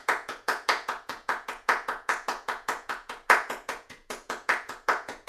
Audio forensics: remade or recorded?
remade